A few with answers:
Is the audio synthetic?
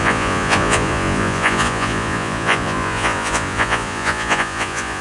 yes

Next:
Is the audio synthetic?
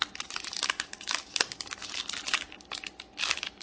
no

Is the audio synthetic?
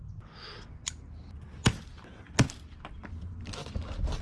no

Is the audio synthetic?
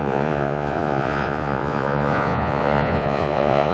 yes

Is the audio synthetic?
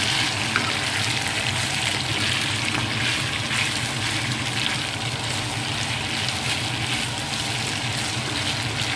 no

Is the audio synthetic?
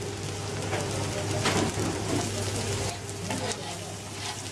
no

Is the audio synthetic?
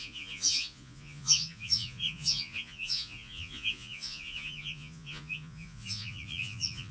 yes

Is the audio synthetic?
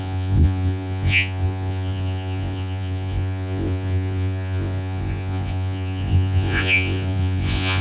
yes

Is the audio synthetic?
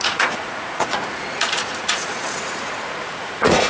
yes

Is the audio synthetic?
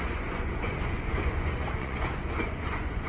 yes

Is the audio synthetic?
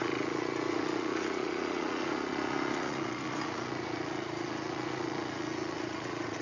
yes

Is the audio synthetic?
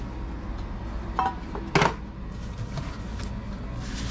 no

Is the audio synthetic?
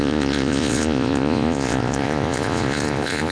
yes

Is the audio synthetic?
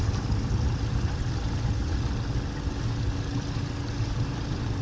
no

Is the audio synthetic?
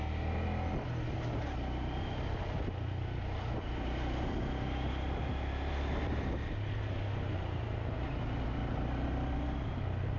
no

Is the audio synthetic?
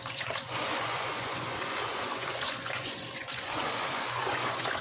yes